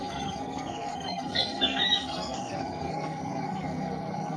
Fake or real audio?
fake